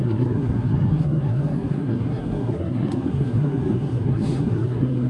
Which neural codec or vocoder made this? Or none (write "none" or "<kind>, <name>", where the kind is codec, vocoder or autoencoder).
codec, SNAC